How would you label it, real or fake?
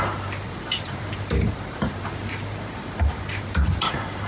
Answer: fake